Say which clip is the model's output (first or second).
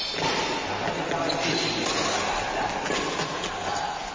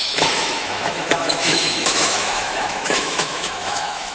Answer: second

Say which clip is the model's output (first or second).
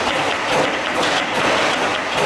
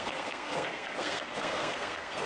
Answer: second